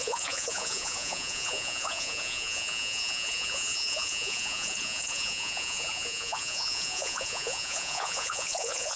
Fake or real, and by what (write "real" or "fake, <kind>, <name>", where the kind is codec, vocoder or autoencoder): fake, vocoder, Vocos